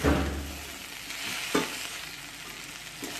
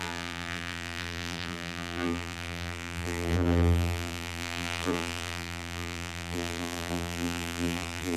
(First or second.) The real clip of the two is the first